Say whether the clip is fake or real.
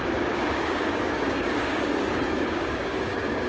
fake